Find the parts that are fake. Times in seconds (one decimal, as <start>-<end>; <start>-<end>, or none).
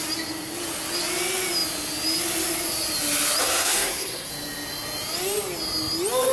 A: 3.4-4.3